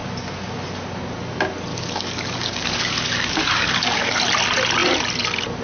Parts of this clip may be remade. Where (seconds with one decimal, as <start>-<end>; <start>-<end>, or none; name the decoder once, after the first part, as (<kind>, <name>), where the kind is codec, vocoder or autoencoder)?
1.7-4.2 (codec, DAC)